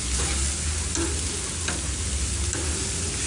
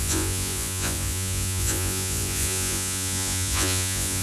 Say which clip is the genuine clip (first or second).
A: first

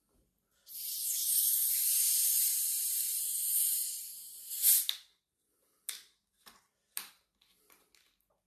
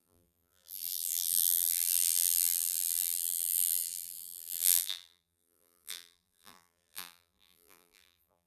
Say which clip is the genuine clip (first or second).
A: first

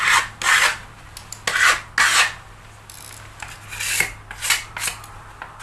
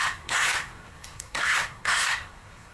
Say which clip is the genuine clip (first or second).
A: first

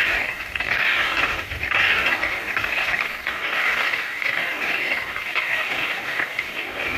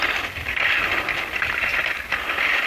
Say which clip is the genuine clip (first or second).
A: second